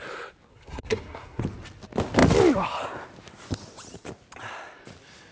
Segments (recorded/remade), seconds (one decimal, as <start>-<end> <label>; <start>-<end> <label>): 0.0-0.5 recorded; 0.5-1.4 remade; 1.4-5.3 recorded